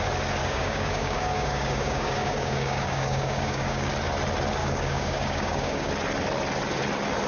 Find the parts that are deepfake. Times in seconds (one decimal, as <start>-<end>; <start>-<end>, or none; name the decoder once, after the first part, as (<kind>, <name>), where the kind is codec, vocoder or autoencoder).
0.4-3.9 (codec, DAC); 4.6-5.9